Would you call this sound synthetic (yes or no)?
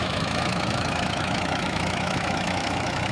yes